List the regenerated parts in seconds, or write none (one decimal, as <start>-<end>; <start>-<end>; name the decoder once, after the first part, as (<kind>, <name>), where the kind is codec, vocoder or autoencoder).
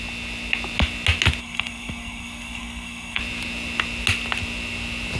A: 1.4-3.2 (codec, SNAC)